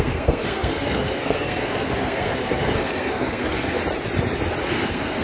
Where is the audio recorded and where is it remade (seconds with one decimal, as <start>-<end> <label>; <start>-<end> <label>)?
0.0-3.8 remade; 3.8-4.7 recorded; 4.7-5.2 remade